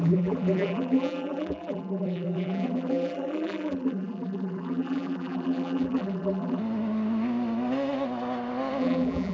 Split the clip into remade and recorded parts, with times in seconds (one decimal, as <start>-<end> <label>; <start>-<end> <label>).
0.0-6.6 remade; 6.6-8.8 recorded; 8.8-9.3 remade